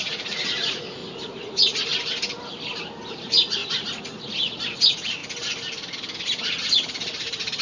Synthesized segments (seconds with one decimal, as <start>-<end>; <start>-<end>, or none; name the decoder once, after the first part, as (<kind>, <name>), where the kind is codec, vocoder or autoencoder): 0.0-1.0 (vocoder, Vocos); 3.1-3.6; 4.8-5.2